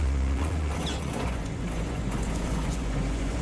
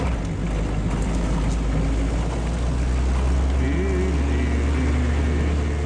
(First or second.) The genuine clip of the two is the second